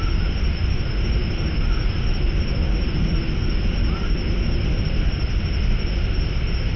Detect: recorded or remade recorded